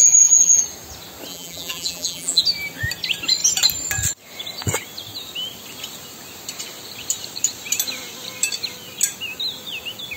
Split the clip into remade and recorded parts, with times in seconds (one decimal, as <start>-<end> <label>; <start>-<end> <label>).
0.0-0.6 remade; 0.6-1.3 recorded; 1.3-2.4 remade; 2.4-10.2 recorded